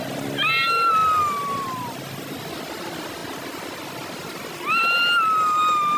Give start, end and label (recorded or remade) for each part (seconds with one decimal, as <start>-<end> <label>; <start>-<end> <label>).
0.0-6.0 recorded